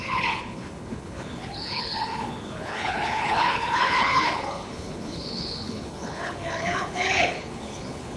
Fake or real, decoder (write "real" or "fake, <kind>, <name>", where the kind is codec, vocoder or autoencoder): fake, codec, HILCodec